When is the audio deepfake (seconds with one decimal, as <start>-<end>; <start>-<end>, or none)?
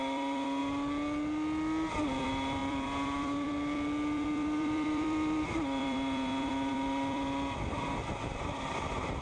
0.0-0.6; 1.9-9.2